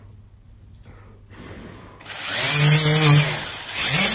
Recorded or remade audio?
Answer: recorded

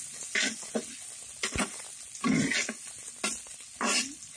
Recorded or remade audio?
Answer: recorded